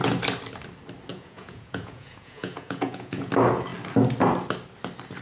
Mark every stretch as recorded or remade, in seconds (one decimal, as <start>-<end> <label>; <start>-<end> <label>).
0.0-1.1 recorded; 1.1-3.3 remade; 3.3-5.2 recorded